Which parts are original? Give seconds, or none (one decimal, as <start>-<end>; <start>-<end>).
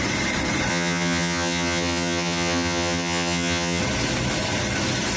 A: 0.0-0.7; 3.8-5.2